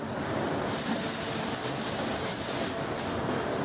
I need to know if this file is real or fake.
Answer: fake